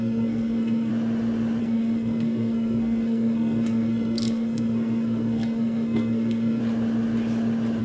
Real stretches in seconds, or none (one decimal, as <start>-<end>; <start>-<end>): 0.9-1.6; 6.6-7.8